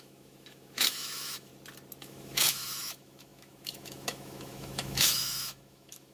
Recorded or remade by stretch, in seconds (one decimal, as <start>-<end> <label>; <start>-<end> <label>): 0.0-1.5 remade; 1.5-2.0 recorded; 2.0-6.1 remade